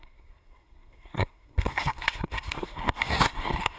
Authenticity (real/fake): fake